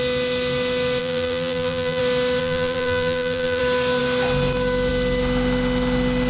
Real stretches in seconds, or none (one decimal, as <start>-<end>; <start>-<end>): 0.0-1.0; 2.0-2.4; 3.6-6.3